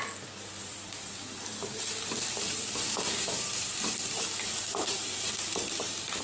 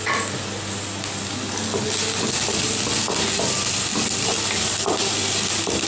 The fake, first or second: first